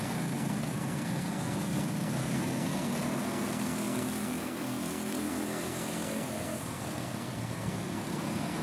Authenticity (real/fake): fake